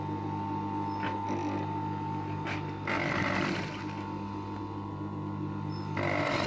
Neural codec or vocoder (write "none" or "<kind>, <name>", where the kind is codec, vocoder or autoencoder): none